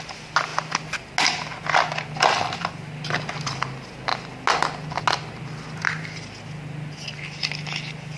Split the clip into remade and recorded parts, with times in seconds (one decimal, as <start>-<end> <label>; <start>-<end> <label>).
0.0-8.2 recorded